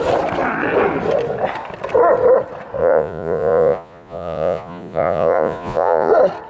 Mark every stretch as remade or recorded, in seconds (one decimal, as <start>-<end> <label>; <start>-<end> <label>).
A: 0.0-2.8 recorded; 2.8-6.1 remade; 6.1-6.5 recorded